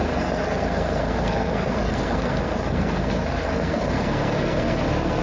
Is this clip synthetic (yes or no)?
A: yes